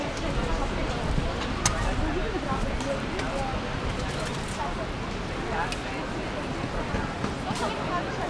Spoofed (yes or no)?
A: no